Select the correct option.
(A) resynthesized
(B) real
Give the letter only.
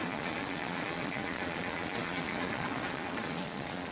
A